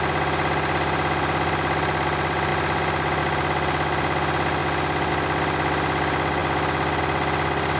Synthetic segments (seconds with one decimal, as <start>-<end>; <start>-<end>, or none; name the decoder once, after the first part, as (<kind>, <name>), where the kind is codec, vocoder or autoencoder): 0.0-4.6 (vocoder, BigVGAN v2); 5.1-7.8